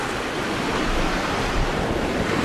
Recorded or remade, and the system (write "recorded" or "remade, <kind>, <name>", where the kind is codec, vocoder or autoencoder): recorded